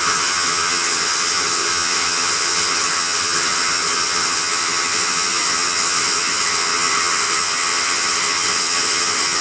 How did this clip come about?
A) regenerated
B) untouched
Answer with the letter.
A